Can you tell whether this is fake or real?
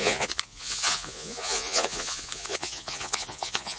fake